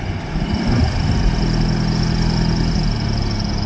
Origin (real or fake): real